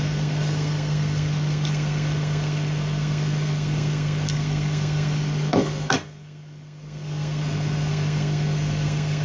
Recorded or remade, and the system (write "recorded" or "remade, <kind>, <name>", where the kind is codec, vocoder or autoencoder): remade, codec, SNAC